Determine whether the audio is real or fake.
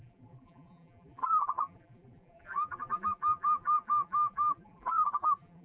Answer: fake